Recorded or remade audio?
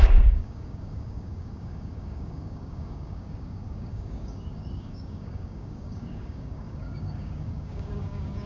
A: remade